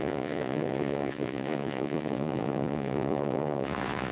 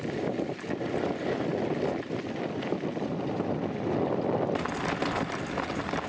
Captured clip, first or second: second